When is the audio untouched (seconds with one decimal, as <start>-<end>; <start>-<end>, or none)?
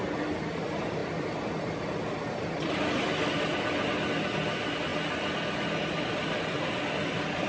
0.0-7.5